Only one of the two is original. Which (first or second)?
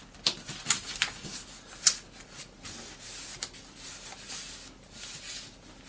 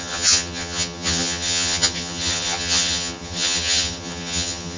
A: first